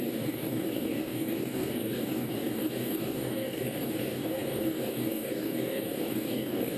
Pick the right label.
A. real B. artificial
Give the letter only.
B